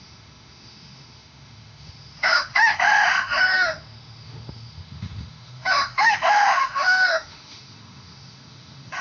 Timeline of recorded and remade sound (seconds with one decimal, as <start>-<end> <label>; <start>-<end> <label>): 0.0-9.0 remade